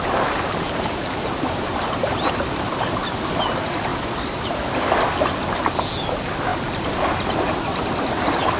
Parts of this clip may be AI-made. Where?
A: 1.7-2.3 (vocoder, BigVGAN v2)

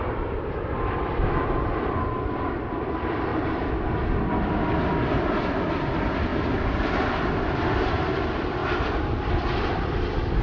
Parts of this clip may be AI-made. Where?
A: 0.0-6.3 (vocoder, BigVGAN v2); 7.9-10.4

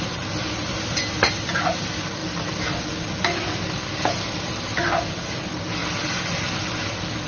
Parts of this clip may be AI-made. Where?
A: 2.2-2.8 (vocoder, BigVGAN v2)

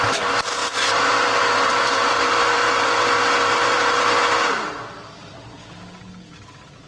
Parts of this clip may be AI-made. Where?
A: 0.6-4.7 (vocoder, BigVGAN v2)